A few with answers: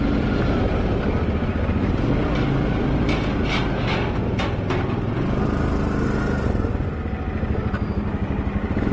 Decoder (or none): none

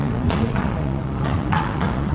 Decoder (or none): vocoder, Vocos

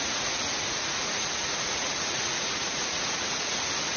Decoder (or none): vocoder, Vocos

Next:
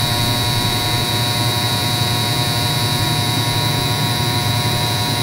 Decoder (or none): vocoder, Vocos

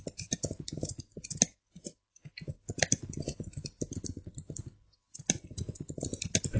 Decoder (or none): none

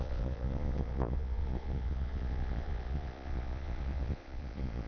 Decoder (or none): vocoder, Vocos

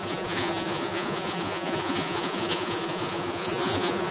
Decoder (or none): vocoder, Vocos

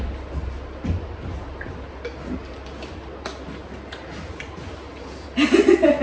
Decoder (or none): none